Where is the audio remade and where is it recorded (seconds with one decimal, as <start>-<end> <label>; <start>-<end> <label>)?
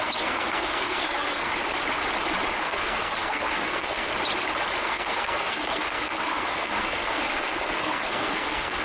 0.0-1.5 remade; 1.5-2.6 recorded; 2.6-4.1 remade; 4.1-4.8 recorded; 4.8-8.8 remade